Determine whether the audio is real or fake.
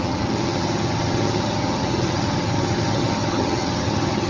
fake